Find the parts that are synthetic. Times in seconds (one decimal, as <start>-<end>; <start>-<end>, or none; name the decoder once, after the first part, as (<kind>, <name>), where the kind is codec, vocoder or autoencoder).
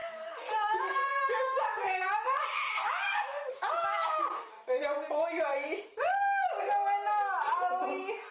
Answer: 0.0-4.8 (autoencoder, DAC-VAE); 5.5-6.5